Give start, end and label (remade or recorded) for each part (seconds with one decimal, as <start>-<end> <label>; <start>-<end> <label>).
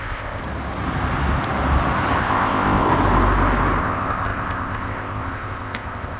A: 0.0-0.4 remade; 0.4-2.2 recorded; 2.2-2.9 remade; 2.9-3.8 recorded; 3.8-6.2 remade